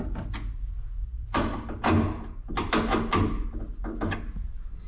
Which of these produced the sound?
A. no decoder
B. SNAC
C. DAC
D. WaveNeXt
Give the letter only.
A